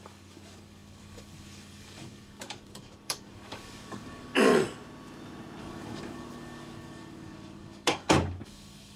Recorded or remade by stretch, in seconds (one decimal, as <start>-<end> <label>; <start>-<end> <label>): 0.0-4.5 remade; 4.5-5.6 recorded; 5.6-9.0 remade